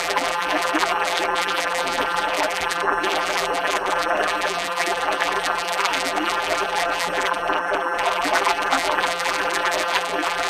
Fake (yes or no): yes